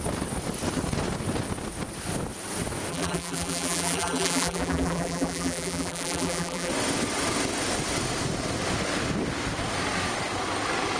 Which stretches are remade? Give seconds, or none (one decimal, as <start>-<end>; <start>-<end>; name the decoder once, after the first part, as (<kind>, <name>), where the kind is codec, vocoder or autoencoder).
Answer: 2.9-6.7 (vocoder, BigVGAN v2)